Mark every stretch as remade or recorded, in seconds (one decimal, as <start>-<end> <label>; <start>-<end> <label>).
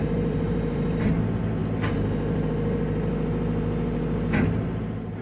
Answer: 0.0-1.0 remade; 1.0-5.2 recorded